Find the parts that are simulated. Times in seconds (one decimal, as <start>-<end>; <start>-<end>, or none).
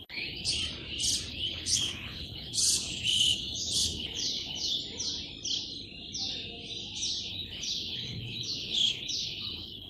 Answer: 0.0-0.5; 1.3-4.8; 7.3-9.9